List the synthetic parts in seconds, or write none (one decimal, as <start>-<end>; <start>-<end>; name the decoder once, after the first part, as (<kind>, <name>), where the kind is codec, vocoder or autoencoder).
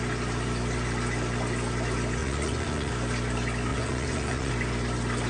2.2-2.9 (vocoder, Vocos); 3.7-4.5